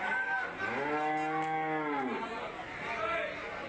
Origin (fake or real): real